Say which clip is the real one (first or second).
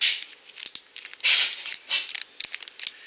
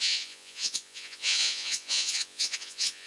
first